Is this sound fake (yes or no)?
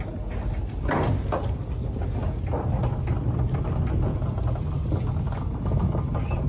no